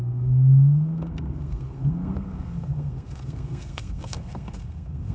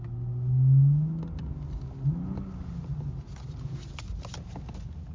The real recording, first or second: second